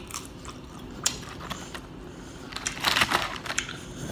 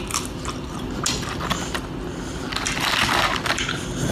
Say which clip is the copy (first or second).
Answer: first